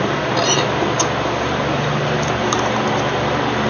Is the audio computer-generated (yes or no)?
yes